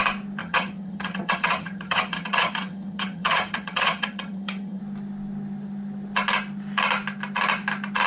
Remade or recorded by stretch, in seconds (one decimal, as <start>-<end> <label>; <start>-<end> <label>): 0.0-0.4 recorded; 0.4-4.8 remade; 4.8-8.1 recorded